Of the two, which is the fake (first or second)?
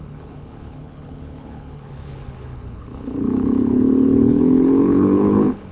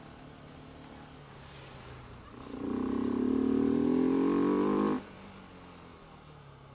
first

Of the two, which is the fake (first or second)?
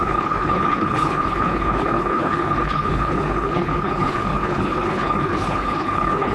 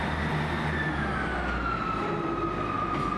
first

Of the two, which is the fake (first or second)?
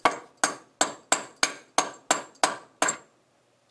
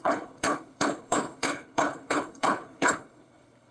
second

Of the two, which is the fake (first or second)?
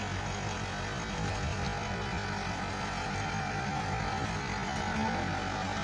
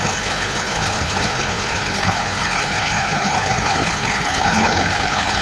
second